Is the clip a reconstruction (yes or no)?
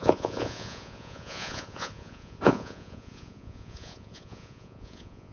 yes